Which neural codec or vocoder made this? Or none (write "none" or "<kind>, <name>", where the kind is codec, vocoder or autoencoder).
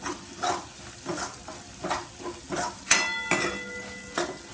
none